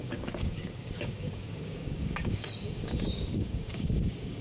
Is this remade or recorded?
remade